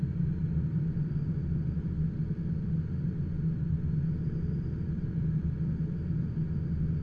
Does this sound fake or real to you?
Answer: real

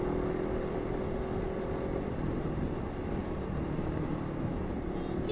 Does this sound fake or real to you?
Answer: real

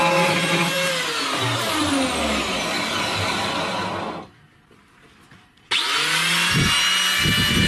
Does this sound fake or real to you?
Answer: real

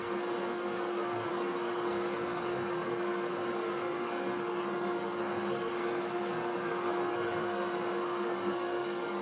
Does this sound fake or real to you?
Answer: fake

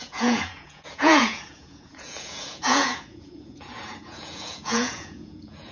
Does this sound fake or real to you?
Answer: fake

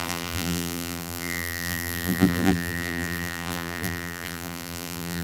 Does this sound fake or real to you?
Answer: fake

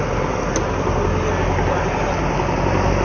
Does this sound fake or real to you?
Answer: real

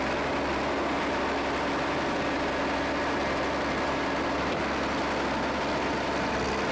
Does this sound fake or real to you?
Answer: real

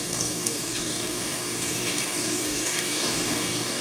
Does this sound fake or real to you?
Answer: fake